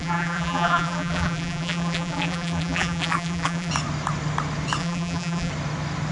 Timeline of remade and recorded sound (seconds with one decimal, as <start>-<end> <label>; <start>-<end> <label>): 0.0-3.7 remade; 3.7-4.8 recorded; 4.8-5.5 remade; 5.5-6.1 recorded